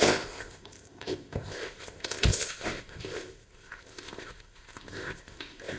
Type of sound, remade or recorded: remade